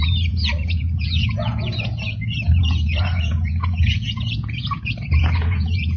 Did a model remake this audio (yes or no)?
yes